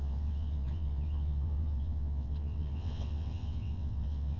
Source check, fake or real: fake